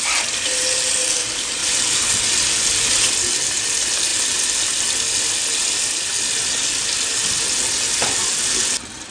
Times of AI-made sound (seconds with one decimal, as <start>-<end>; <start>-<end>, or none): none